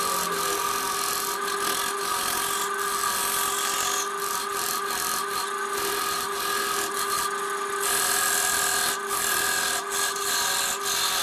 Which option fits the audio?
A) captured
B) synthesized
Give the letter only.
A